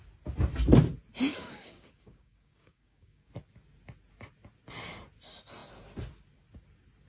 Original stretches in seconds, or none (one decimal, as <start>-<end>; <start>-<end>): 0.0-1.3; 3.3-7.1